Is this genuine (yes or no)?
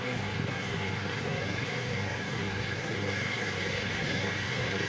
no